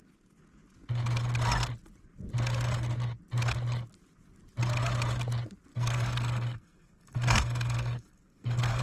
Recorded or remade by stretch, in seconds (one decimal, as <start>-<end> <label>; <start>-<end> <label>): 0.0-5.7 recorded; 5.7-8.8 remade